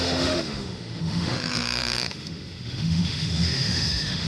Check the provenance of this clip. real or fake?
fake